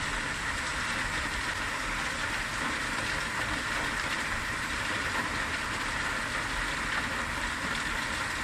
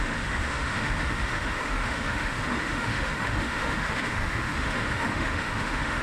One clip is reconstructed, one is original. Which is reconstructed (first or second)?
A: second